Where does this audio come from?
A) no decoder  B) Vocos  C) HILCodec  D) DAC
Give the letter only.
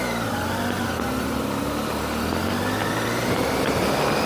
A